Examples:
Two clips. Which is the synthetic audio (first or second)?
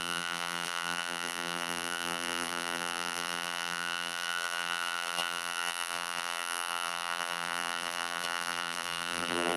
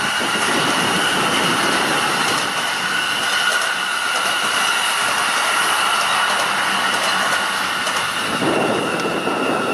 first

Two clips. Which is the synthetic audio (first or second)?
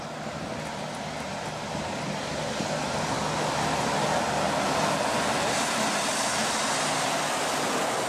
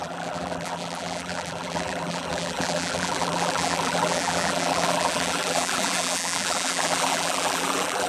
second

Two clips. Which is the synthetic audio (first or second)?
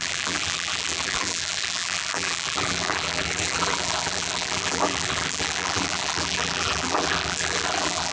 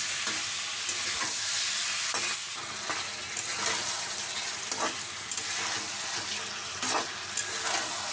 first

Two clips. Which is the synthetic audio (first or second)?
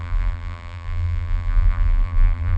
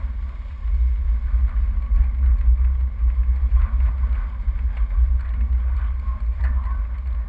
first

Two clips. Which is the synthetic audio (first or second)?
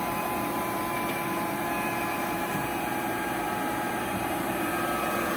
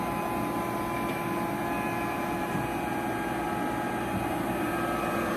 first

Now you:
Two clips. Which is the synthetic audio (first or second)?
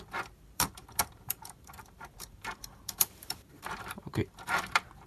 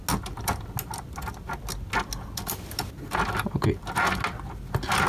first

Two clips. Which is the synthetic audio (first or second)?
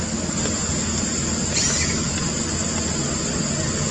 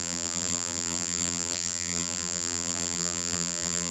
second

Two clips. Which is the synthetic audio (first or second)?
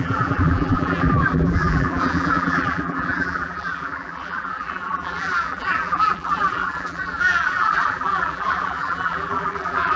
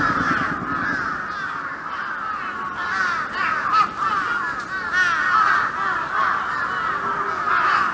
first